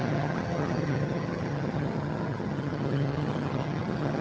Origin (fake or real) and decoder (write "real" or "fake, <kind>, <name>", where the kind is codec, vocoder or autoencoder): fake, vocoder, HiFi-GAN